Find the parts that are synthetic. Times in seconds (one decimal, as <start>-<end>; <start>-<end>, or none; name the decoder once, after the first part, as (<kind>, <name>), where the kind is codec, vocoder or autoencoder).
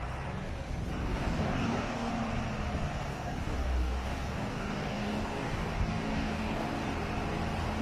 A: 1.0-2.1 (codec, DAC); 3.1-6.7